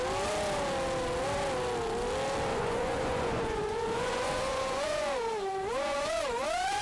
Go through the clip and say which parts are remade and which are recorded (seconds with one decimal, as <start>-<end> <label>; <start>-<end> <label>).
0.0-2.5 recorded; 2.5-6.8 remade

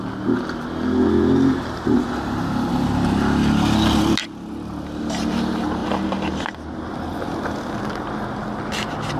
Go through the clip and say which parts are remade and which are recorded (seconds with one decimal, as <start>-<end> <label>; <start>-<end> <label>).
0.0-9.2 recorded

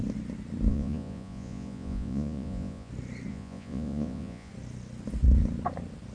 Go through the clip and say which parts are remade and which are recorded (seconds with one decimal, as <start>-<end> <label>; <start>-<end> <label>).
0.0-0.7 recorded; 0.7-2.9 remade; 2.9-3.3 recorded; 3.3-4.5 remade; 4.5-6.1 recorded

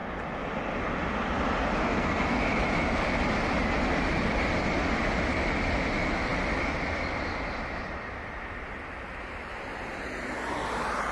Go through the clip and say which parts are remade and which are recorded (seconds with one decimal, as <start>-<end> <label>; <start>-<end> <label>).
0.0-1.8 recorded; 1.8-2.4 remade; 2.4-11.1 recorded

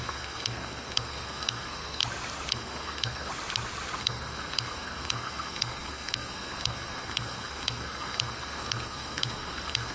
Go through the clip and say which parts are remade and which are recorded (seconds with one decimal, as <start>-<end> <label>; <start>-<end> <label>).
0.0-2.0 remade; 2.0-2.5 recorded; 2.5-3.3 remade; 3.3-4.0 recorded; 4.0-9.9 remade